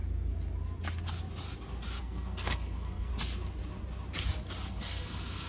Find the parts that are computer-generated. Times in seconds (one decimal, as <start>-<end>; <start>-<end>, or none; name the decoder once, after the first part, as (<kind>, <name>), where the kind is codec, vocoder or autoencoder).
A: 2.0-3.1 (codec, SNAC); 4.6-5.5